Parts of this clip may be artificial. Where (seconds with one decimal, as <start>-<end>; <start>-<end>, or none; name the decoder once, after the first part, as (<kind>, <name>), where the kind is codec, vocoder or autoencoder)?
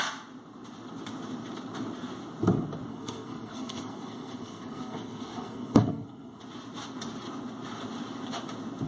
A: 2.9-6.4 (codec, SNAC)